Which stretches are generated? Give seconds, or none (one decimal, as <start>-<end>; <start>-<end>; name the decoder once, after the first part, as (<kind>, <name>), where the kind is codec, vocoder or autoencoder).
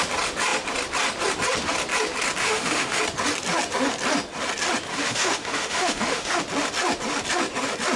2.4-3.0 (autoencoder, DAC-VAE); 4.9-6.4